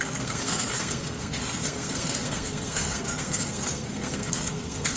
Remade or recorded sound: remade